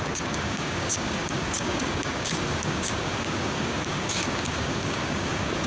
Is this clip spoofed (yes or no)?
yes